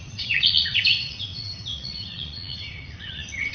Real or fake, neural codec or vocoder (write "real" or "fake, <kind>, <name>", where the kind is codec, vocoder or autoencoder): fake, vocoder, WaveNeXt